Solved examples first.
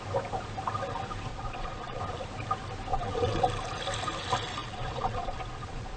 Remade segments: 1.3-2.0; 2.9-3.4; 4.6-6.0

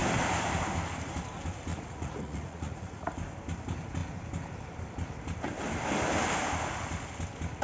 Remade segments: 1.7-3.1

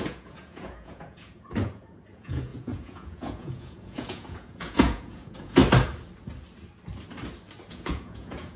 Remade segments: 0.0-5.6; 7.7-8.6

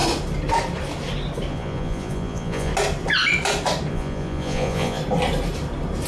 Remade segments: 1.5-2.7; 3.9-5.0

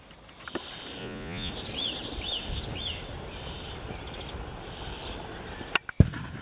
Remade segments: 1.0-1.5

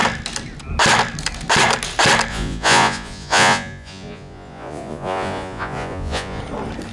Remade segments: 2.3-6.4

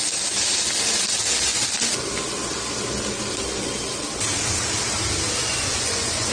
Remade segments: 5.4-6.3